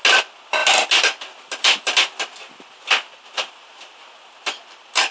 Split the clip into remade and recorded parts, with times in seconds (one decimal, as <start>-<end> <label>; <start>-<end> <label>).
0.0-5.1 recorded